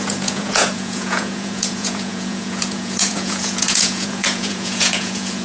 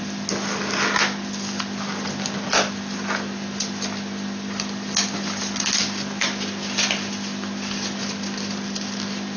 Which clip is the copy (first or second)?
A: first